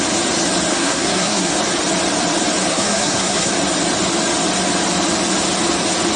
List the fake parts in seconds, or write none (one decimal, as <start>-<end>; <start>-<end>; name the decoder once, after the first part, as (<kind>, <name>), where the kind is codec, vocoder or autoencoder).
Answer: 0.7-1.5 (codec, SNAC); 2.7-3.5